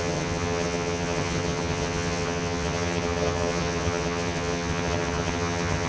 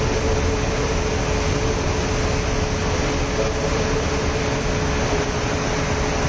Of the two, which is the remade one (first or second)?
first